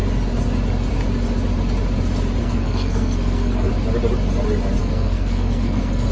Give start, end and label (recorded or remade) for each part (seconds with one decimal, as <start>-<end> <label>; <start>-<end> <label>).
0.0-2.4 recorded; 2.4-3.7 remade; 3.7-4.8 recorded; 4.8-6.1 remade